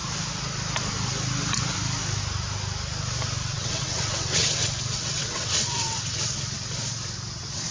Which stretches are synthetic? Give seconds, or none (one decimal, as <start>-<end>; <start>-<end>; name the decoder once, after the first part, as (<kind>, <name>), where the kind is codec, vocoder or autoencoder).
3.4-6.2 (vocoder, WaveNeXt)